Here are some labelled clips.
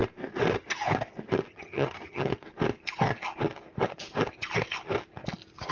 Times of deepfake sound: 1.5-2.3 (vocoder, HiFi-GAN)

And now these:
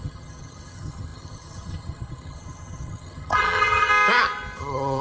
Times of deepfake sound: 0.0-3.9 (vocoder, HiFi-GAN); 4.6-5.0